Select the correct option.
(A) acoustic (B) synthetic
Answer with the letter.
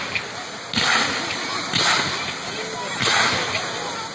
A